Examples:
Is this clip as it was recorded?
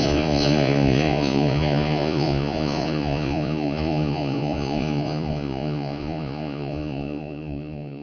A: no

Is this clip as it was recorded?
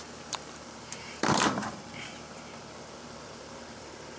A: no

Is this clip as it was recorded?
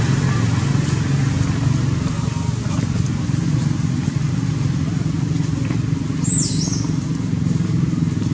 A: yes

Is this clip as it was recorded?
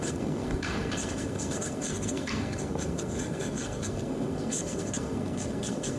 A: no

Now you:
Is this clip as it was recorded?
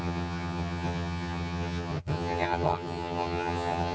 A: no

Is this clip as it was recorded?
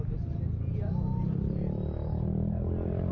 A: yes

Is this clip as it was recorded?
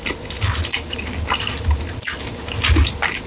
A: yes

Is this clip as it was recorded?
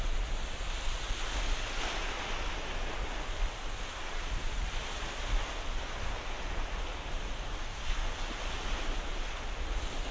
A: yes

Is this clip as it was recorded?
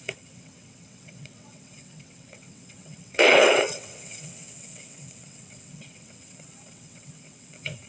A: no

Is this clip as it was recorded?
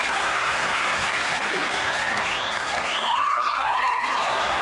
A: no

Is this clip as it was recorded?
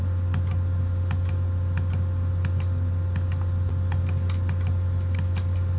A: yes